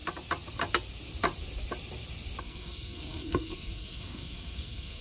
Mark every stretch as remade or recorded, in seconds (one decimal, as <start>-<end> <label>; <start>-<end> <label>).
0.0-2.4 recorded; 2.4-5.0 remade